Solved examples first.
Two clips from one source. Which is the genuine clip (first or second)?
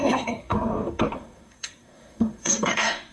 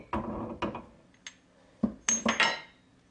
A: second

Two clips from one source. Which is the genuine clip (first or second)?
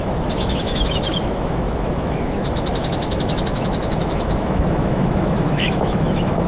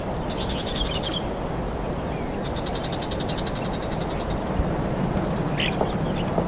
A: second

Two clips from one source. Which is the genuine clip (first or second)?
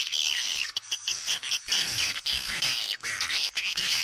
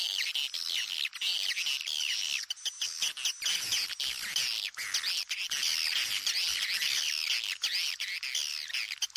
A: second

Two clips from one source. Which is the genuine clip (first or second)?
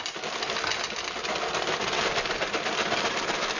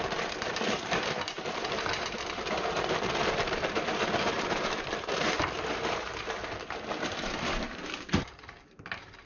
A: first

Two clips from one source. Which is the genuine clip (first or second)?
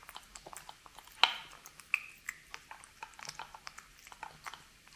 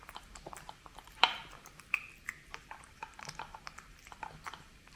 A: first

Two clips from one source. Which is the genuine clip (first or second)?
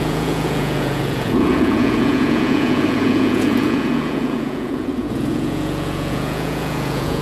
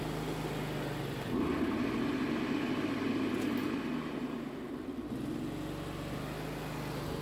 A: second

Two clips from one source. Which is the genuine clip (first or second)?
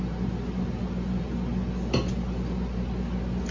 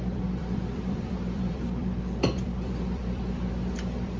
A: first